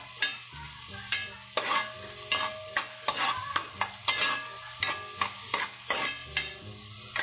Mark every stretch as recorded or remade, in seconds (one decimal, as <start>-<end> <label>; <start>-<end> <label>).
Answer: 0.0-7.2 recorded